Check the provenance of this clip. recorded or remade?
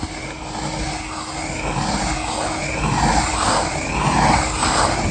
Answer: recorded